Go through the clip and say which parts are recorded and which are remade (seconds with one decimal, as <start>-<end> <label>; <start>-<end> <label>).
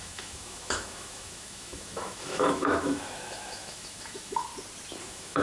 0.0-4.5 remade; 4.5-5.0 recorded; 5.0-5.4 remade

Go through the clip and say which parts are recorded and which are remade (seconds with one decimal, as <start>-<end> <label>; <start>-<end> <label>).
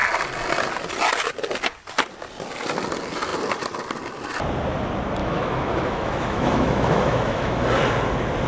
0.0-5.2 recorded; 5.2-7.6 remade; 7.6-8.5 recorded